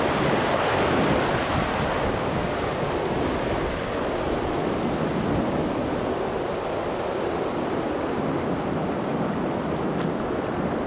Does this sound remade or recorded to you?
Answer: recorded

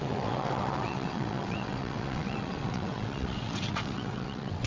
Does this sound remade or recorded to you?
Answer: remade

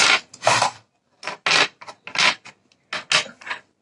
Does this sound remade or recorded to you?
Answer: recorded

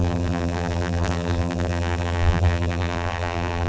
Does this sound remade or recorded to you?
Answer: remade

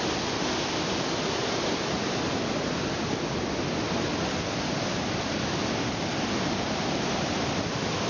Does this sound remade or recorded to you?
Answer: recorded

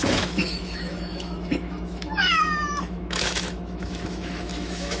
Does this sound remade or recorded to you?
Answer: remade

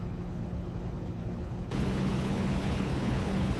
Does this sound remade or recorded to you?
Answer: remade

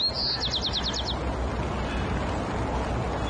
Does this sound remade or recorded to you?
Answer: recorded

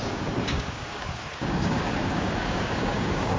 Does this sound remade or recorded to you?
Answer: remade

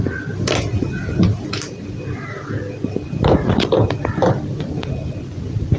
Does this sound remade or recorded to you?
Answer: recorded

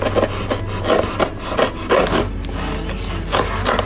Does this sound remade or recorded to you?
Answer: recorded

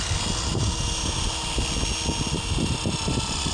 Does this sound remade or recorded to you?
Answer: recorded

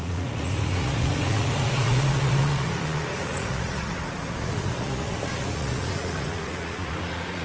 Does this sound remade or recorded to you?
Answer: remade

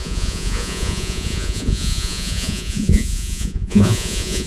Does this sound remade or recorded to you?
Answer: remade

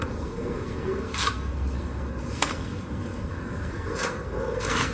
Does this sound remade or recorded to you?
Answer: remade